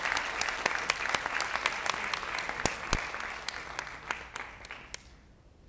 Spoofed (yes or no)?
no